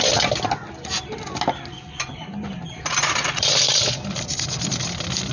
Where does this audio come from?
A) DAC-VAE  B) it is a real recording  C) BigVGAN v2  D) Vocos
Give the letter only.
B